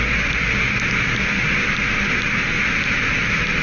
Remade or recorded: recorded